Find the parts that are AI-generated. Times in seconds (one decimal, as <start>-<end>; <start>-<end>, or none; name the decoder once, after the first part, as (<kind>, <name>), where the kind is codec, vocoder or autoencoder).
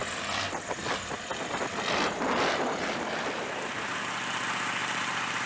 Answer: 0.0-0.9 (vocoder, BigVGAN v2); 1.3-4.1; 4.8-5.5